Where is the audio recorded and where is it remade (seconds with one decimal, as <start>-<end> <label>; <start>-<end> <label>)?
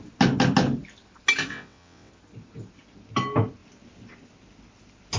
0.0-1.5 recorded; 1.5-2.1 remade; 2.1-5.2 recorded